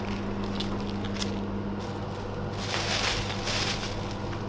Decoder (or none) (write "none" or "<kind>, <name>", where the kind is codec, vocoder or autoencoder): none